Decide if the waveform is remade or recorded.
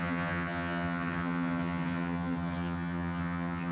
remade